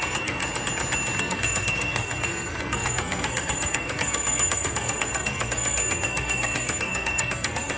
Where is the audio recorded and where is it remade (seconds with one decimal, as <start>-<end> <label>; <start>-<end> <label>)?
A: 0.0-0.4 remade; 0.4-1.2 recorded; 1.2-7.8 remade